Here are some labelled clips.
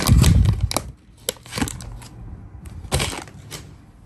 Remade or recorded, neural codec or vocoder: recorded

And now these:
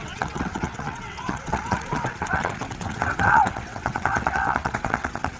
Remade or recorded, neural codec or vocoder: remade, vocoder, WaveNeXt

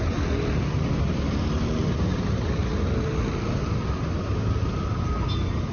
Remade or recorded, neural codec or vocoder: recorded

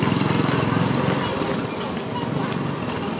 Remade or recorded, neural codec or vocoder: recorded